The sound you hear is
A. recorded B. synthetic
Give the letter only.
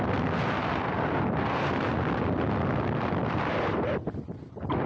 A